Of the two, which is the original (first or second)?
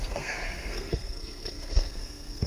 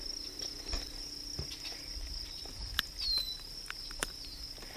second